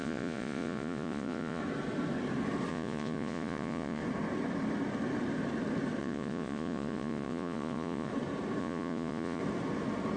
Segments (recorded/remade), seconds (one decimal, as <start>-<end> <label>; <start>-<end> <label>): 0.0-1.6 remade; 1.6-2.7 recorded; 2.7-4.0 remade; 4.0-6.0 recorded; 6.0-8.1 remade; 8.1-8.6 recorded; 8.6-9.4 remade; 9.4-10.2 recorded